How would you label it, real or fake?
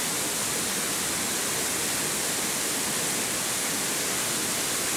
real